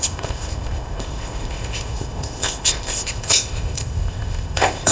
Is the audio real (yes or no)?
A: no